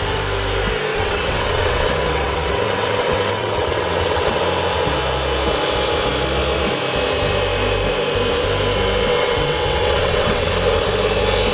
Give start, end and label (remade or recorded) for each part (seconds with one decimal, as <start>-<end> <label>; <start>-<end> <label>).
0.0-0.9 recorded; 0.9-4.4 remade; 4.4-9.1 recorded; 9.1-10.5 remade; 10.5-11.5 recorded